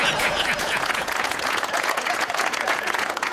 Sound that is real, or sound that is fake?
fake